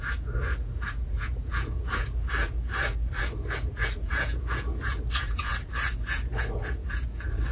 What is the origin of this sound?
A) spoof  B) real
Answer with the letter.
A